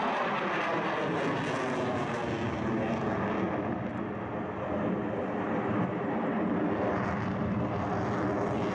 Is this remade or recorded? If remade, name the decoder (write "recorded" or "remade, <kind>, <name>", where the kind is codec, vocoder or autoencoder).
recorded